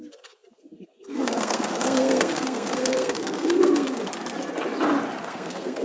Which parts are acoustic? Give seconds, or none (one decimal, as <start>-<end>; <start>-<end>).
4.1-5.2